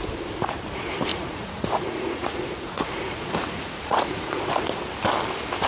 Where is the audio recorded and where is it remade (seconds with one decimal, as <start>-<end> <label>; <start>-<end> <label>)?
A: 0.0-1.1 recorded; 1.1-4.5 remade; 4.5-5.7 recorded